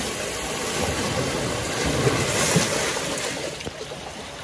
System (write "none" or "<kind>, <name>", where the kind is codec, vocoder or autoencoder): none